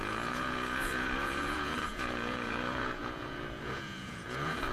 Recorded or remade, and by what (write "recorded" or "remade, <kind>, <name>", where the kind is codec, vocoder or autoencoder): remade, vocoder, Vocos